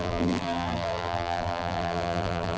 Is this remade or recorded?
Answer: remade